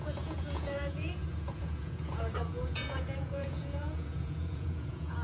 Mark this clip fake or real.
fake